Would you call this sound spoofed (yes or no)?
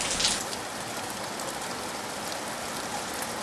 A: no